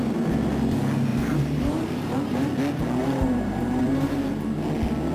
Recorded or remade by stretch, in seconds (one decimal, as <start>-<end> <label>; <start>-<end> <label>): 0.0-1.1 recorded; 1.1-2.6 remade; 2.6-3.0 recorded; 3.0-4.3 remade; 4.3-5.1 recorded